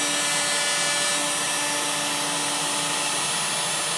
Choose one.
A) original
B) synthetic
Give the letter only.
A